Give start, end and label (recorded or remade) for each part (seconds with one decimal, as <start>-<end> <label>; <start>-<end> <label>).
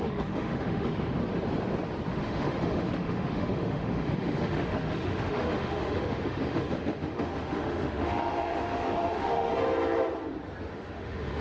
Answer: 0.0-1.2 remade; 1.2-2.1 recorded; 2.1-9.5 remade; 9.5-10.7 recorded; 10.7-11.4 remade